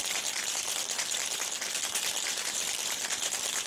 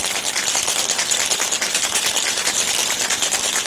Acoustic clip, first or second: second